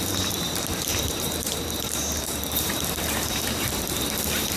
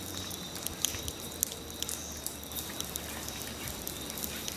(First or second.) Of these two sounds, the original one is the second